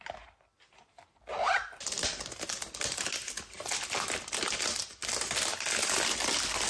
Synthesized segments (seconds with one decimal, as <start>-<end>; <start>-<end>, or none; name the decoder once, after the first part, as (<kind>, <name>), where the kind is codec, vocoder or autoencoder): none